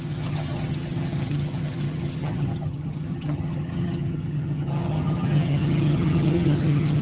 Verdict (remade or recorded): remade